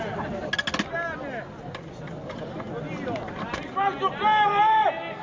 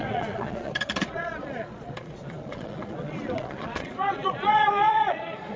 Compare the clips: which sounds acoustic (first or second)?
first